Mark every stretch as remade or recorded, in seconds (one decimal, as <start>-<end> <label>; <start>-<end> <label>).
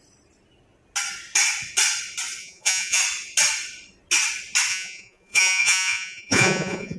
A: 0.0-2.4 recorded; 2.4-3.0 remade; 3.0-4.7 recorded; 4.7-7.0 remade